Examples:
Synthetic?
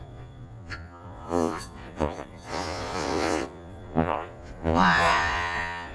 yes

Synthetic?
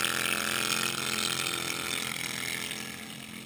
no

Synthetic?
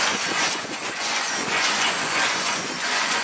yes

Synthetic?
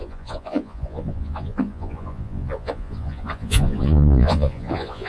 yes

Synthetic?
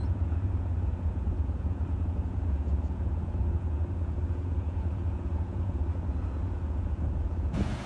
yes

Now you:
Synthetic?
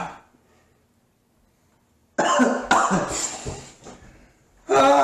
no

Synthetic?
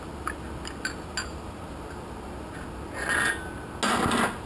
no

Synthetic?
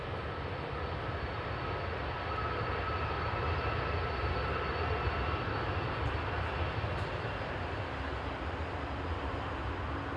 no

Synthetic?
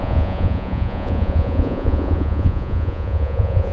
yes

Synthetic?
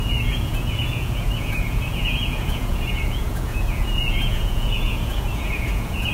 yes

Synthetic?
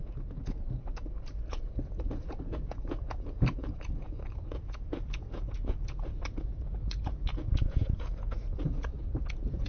yes